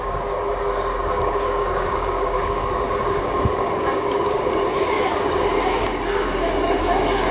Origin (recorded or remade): remade